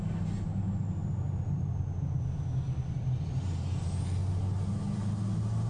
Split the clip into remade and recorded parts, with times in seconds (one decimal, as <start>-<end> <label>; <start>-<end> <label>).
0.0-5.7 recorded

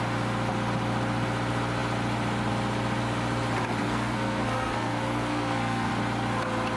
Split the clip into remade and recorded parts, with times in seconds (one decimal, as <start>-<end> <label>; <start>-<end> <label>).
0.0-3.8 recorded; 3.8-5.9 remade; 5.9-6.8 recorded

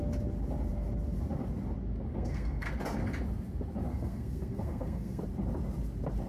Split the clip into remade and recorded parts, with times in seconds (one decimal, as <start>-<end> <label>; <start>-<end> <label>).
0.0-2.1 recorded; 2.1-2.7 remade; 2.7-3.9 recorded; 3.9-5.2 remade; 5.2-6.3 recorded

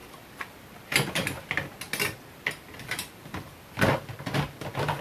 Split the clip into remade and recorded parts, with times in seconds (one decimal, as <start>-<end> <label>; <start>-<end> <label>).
0.0-5.0 recorded

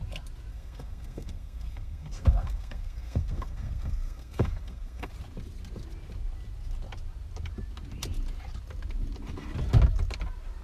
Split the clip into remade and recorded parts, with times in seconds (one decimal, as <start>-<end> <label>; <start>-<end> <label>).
0.0-0.5 recorded; 0.5-5.1 remade; 5.1-10.6 recorded

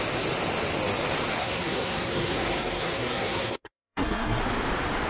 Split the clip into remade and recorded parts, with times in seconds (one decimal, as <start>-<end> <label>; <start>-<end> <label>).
0.0-1.4 recorded; 1.4-4.4 remade; 4.4-5.1 recorded